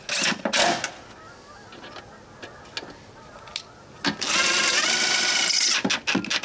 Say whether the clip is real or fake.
real